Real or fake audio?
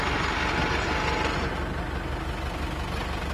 real